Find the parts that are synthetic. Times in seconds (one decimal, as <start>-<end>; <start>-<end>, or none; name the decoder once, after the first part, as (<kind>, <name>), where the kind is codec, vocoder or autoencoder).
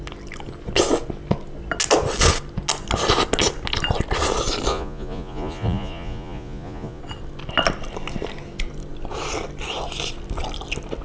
4.7-7.0 (vocoder, Vocos)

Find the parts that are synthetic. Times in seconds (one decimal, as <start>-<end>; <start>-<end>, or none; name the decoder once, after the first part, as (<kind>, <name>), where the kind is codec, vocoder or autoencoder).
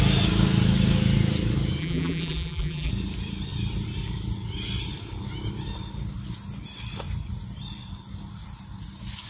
1.8-2.9 (vocoder, BigVGAN v2)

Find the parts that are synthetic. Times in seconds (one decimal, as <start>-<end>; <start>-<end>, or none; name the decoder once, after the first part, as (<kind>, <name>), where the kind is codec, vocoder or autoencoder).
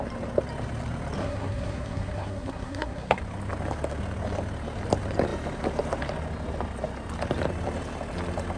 1.2-3.2 (codec, SNAC)